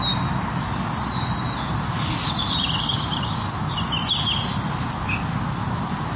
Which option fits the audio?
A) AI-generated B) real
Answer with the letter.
B